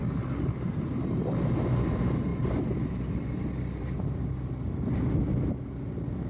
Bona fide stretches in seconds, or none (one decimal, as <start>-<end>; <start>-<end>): 0.0-6.3